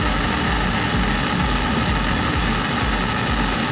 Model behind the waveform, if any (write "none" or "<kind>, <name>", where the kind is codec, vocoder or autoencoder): none